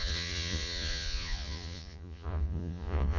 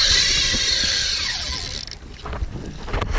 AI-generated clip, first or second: first